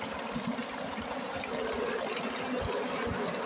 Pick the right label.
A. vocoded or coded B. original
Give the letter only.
B